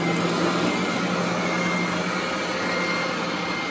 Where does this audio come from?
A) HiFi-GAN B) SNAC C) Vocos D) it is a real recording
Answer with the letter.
D